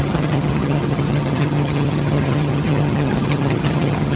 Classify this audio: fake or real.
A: fake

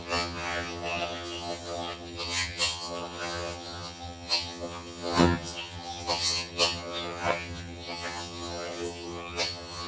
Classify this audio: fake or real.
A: fake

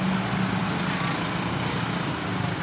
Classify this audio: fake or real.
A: real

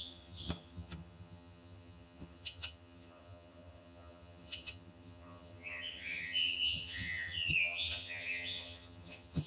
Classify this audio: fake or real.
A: fake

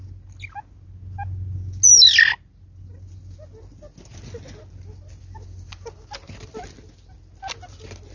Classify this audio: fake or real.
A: real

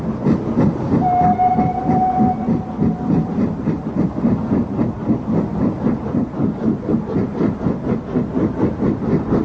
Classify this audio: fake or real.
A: real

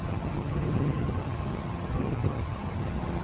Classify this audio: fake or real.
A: fake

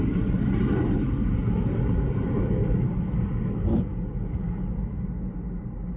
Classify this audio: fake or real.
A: real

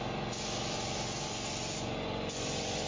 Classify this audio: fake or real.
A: real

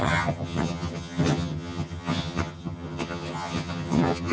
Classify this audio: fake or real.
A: fake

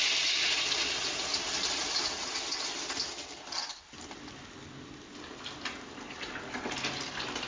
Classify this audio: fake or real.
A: real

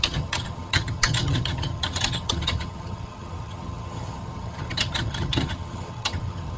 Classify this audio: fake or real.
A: fake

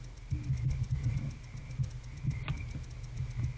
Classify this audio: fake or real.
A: real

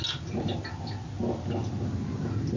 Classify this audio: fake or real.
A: real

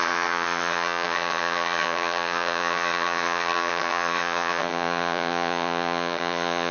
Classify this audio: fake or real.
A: fake